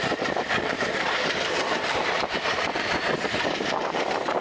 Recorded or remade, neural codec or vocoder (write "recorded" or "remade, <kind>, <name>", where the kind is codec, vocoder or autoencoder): remade, vocoder, BigVGAN v2